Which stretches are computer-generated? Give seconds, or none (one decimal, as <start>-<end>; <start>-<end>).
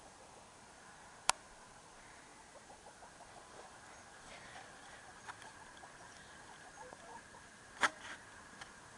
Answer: 0.0-9.0